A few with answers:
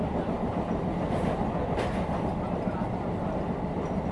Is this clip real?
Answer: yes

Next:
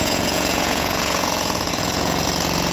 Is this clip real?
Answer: no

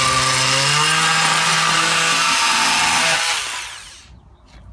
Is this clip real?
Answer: yes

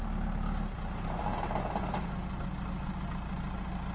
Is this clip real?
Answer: yes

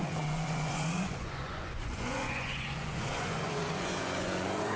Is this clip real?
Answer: no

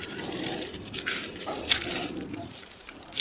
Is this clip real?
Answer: no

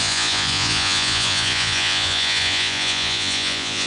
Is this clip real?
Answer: no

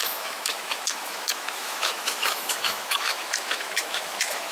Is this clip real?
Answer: no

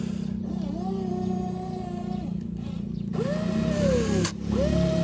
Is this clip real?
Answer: yes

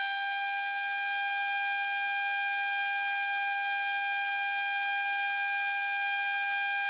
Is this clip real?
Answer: yes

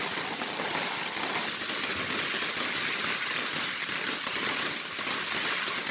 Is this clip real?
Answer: yes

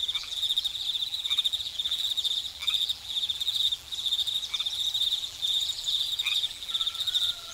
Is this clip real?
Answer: no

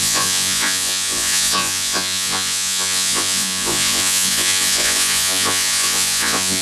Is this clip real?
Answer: no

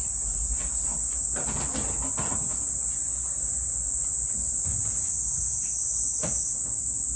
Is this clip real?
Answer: yes